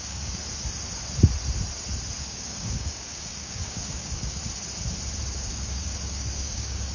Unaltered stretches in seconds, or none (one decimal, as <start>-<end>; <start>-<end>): 0.4-2.2; 4.4-5.3

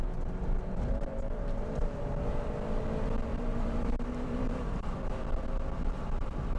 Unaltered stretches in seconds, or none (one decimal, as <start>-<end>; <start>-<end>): 0.0-1.1; 2.0-3.3; 4.9-6.6

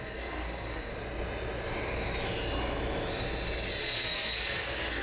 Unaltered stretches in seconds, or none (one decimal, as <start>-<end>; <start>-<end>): 0.9-3.8

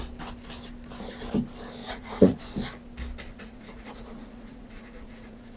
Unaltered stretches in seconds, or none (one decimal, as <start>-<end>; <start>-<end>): 0.0-1.8; 2.4-3.3

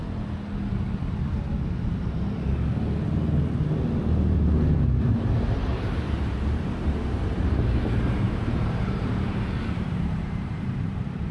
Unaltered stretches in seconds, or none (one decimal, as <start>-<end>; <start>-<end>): 0.0-5.0

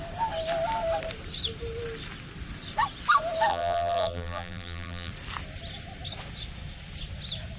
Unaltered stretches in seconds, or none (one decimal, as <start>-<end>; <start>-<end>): 0.0-3.5; 5.1-7.6

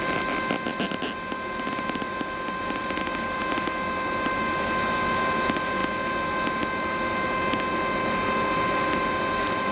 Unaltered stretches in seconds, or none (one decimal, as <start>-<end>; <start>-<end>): 0.0-9.7